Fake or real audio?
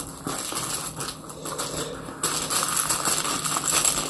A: real